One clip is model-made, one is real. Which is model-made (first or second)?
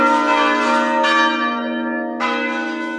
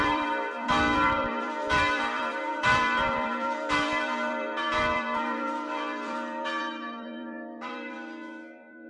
second